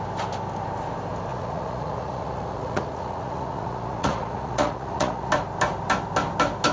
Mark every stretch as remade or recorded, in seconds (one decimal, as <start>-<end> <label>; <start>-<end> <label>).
0.0-1.3 recorded; 1.3-5.3 remade; 5.3-6.7 recorded